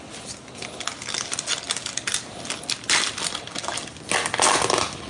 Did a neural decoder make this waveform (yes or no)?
no